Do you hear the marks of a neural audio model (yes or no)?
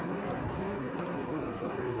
yes